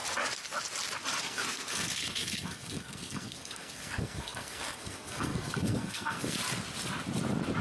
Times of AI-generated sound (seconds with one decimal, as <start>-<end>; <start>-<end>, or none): 1.2-6.4